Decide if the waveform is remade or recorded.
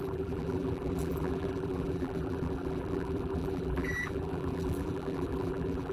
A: remade